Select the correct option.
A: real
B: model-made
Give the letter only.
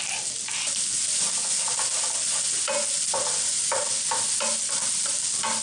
A